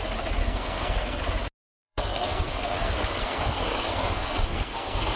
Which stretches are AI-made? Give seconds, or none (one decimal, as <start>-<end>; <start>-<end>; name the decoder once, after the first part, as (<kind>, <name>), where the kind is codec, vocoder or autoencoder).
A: 0.4-1.2 (codec, SNAC); 1.8-5.2